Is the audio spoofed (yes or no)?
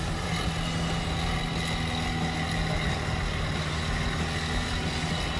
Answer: no